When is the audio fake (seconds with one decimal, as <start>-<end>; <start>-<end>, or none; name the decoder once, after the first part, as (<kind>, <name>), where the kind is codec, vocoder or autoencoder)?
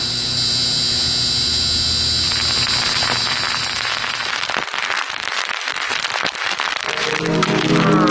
none